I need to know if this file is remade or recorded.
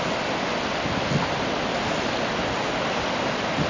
recorded